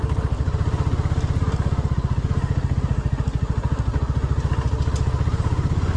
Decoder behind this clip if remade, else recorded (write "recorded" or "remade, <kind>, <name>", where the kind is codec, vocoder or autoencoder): recorded